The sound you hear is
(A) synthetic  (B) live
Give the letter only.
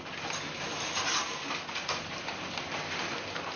B